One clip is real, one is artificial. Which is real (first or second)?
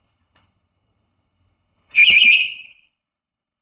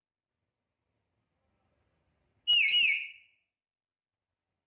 second